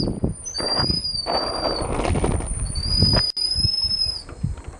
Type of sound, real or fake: real